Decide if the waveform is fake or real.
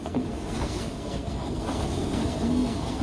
fake